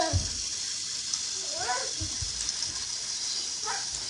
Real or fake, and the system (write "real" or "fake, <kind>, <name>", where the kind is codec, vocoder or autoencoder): real